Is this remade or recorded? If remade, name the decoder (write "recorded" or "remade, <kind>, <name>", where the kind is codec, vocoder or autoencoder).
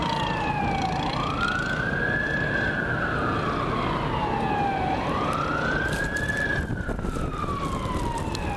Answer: recorded